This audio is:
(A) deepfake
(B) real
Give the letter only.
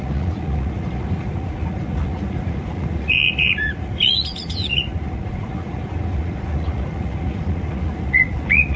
A